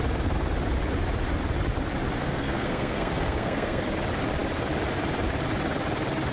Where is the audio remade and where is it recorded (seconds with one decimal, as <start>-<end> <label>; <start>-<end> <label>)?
0.0-2.2 recorded; 2.2-3.8 remade; 3.8-6.3 recorded